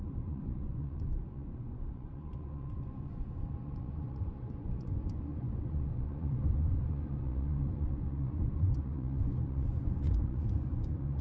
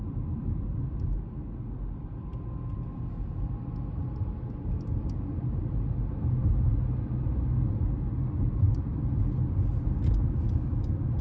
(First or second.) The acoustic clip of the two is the second